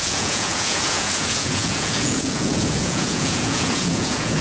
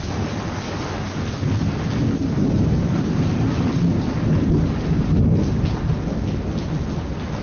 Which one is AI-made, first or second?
first